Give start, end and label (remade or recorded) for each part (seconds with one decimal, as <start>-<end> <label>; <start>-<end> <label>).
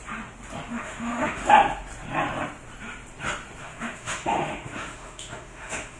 0.0-0.7 recorded; 0.7-1.5 remade; 1.5-3.6 recorded; 3.6-6.0 remade